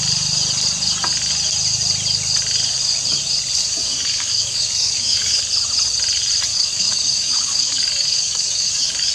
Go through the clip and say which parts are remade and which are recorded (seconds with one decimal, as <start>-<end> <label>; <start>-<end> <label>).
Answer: 0.0-3.6 recorded; 3.6-5.4 remade; 5.4-6.5 recorded; 6.5-9.1 remade